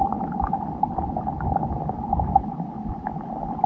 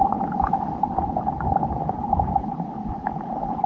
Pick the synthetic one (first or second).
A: second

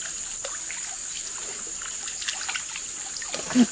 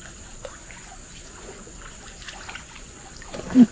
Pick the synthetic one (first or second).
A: second